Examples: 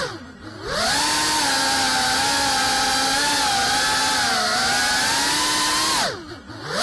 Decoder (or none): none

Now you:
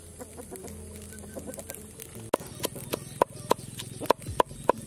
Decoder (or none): none